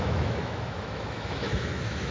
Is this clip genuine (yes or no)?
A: no